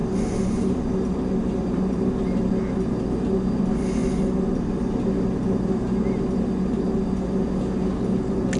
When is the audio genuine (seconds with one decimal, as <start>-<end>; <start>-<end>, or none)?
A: 0.0-8.6